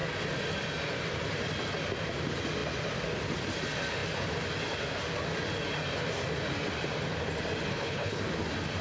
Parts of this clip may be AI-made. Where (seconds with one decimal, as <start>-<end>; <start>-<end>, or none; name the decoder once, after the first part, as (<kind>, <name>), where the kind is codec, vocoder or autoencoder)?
7.7-8.2 (codec, HILCodec)

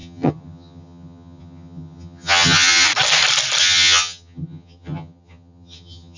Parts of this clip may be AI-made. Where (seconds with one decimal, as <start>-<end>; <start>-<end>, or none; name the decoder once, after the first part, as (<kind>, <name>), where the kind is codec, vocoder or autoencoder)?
0.0-2.9 (vocoder, HiFi-GAN); 3.6-6.2

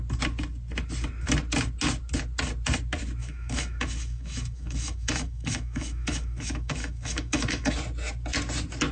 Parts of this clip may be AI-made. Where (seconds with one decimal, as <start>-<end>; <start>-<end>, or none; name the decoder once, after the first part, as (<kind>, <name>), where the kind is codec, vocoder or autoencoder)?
3.2-7.7 (autoencoder, DAC-VAE)

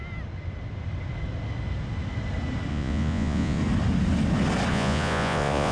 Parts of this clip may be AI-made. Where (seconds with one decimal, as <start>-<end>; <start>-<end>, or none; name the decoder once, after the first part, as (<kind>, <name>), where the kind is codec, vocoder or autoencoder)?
2.7-3.6 (vocoder, Vocos); 4.7-5.7

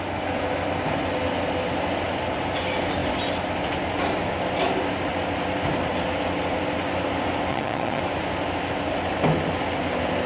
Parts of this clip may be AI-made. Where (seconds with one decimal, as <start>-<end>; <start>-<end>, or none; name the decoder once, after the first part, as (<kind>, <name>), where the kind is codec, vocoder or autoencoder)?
7.5-8.0 (vocoder, HiFi-GAN)

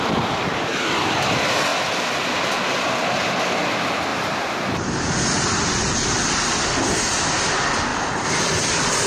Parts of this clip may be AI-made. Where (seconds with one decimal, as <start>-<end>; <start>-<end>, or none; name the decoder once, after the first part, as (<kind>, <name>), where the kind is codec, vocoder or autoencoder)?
4.1-7.2 (vocoder, BigVGAN v2); 7.9-8.7

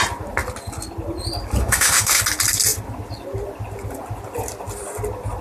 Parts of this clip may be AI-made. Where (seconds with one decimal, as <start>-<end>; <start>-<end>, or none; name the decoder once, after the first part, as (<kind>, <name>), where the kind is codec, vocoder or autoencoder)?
1.6-2.2 (autoencoder, DAC-VAE)

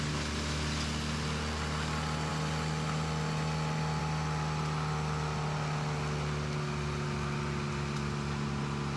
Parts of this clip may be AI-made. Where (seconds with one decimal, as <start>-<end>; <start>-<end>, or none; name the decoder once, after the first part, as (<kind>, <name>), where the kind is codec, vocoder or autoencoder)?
none